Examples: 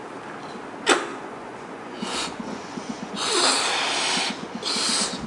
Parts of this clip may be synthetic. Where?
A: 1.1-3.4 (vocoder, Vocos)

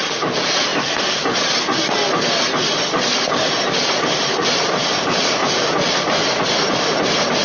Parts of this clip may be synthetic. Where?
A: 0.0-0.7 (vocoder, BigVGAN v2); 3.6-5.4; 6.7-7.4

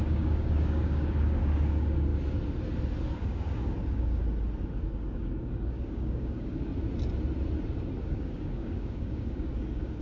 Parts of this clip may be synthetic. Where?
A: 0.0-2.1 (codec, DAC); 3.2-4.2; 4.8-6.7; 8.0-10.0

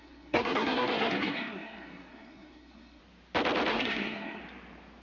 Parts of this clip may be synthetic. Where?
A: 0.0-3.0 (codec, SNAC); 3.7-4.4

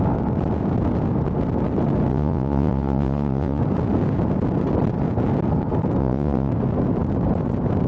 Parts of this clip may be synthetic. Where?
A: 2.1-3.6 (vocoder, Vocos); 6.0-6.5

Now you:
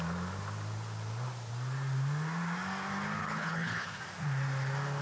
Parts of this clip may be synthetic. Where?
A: 3.2-4.0 (codec, HILCodec)